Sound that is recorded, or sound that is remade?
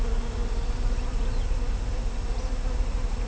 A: recorded